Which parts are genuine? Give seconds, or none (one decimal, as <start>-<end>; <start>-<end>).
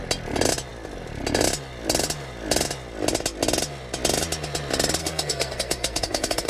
0.0-5.0